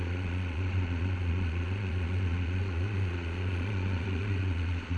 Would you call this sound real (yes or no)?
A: no